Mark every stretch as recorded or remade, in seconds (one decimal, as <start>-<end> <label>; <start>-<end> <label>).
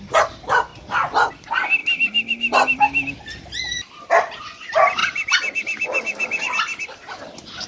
0.0-7.7 recorded